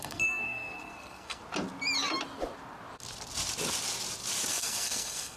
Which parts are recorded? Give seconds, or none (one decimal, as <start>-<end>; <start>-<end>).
1.4-4.5